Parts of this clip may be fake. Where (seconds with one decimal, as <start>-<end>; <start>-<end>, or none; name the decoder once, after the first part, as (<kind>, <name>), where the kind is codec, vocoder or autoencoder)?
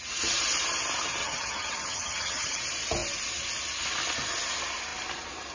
1.2-2.6 (vocoder, HiFi-GAN)